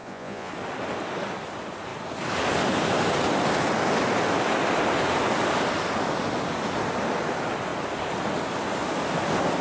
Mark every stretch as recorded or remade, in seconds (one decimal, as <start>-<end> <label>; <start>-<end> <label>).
0.0-0.5 remade; 0.5-9.6 recorded